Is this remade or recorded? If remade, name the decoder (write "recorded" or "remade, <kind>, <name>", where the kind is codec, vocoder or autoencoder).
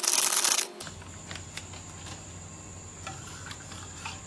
recorded